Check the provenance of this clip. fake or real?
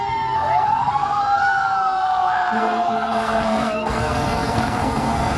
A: fake